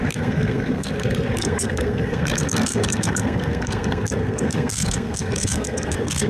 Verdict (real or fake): fake